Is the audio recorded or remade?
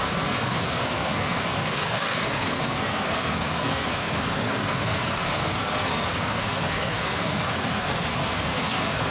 remade